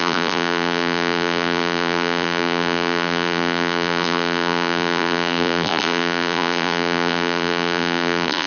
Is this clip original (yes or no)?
no